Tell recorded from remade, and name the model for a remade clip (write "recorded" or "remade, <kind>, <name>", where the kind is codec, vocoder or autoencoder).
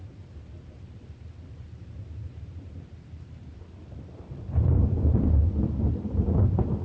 remade, vocoder, BigVGAN v2